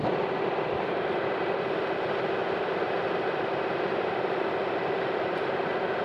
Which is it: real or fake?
real